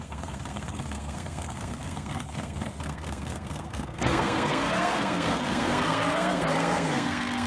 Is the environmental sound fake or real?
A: fake